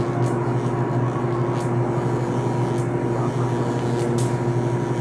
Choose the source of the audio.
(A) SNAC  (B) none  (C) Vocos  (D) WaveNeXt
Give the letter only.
B